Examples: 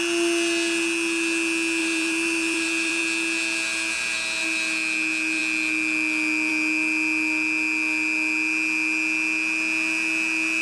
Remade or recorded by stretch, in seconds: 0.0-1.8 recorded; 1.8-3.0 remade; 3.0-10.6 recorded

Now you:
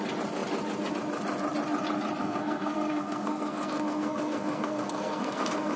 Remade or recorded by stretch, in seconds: 0.0-2.2 recorded; 2.2-5.8 remade